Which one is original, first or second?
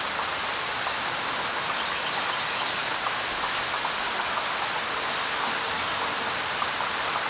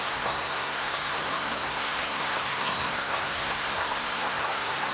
first